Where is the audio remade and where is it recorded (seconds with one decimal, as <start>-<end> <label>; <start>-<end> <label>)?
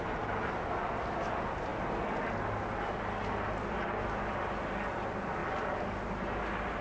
0.0-6.8 recorded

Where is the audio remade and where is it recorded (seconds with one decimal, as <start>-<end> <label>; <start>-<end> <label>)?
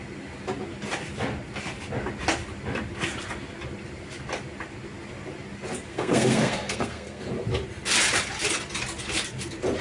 0.0-5.9 recorded; 5.9-7.3 remade; 7.3-9.8 recorded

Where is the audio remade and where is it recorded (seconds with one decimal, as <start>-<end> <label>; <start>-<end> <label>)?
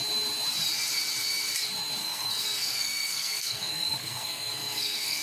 0.0-2.0 recorded; 2.0-5.2 remade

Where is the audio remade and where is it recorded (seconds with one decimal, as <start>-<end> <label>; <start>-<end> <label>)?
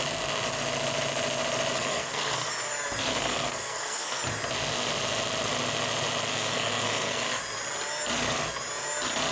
0.0-1.7 recorded; 1.7-2.5 remade; 2.5-3.1 recorded; 3.1-4.2 remade; 4.2-6.3 recorded; 6.3-7.4 remade; 7.4-9.3 recorded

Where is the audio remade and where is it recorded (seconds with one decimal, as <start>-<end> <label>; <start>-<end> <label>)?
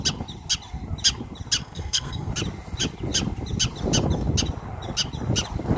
0.0-1.6 recorded; 1.6-2.3 remade; 2.3-5.8 recorded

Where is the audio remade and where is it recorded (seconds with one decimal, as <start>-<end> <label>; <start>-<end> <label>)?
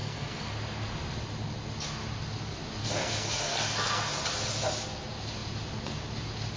0.0-0.5 remade; 0.5-2.8 recorded; 2.8-4.0 remade; 4.0-6.6 recorded